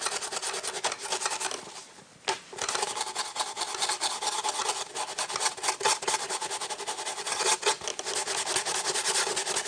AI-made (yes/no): no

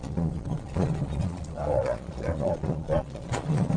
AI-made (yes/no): yes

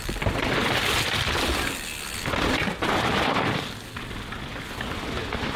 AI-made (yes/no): no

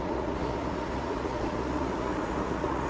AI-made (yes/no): yes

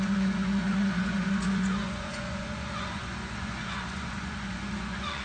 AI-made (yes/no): yes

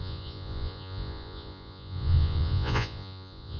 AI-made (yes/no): yes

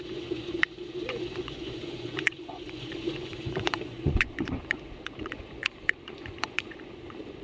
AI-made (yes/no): yes